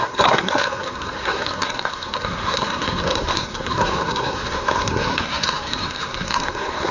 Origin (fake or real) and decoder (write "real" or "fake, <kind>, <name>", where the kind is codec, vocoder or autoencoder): fake, codec, SNAC